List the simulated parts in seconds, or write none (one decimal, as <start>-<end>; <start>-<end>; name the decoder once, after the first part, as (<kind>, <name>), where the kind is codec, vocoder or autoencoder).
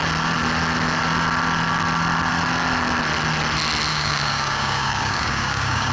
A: 3.9-5.9 (codec, DAC)